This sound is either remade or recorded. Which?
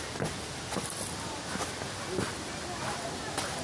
recorded